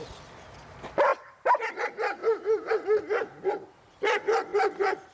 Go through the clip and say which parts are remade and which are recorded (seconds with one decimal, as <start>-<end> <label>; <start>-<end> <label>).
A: 0.0-1.1 recorded; 1.1-1.7 remade; 1.7-2.2 recorded; 2.2-2.7 remade; 2.7-5.1 recorded